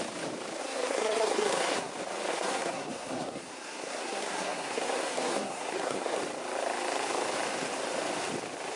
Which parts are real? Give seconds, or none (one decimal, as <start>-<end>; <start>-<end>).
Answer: 0.0-0.6; 1.9-2.3; 6.2-8.8

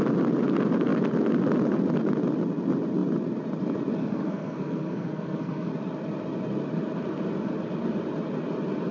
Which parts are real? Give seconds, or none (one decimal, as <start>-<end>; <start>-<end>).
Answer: 0.0-4.0; 5.7-8.9